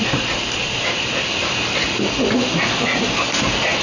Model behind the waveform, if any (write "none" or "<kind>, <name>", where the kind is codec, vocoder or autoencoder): none